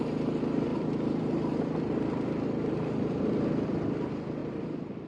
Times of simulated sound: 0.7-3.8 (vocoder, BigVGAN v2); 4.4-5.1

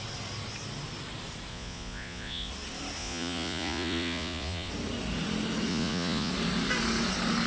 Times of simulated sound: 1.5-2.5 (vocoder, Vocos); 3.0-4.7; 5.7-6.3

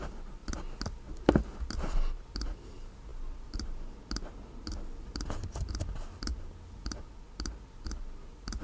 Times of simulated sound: none

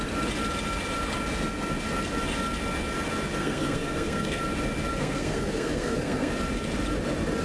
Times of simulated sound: 3.4-4.4 (codec, SNAC); 4.9-6.3

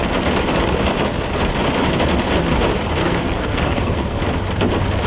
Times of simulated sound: 3.0-4.2 (codec, SNAC)